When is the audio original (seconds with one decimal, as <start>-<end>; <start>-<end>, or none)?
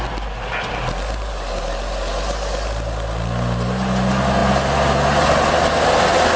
0.0-6.4